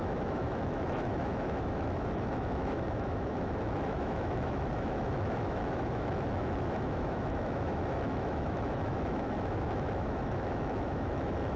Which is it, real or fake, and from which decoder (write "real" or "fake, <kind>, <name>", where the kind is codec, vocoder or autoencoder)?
fake, autoencoder, DAC-VAE